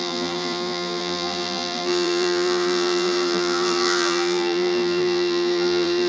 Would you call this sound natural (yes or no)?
no